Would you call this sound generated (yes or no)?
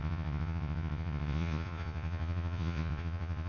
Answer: yes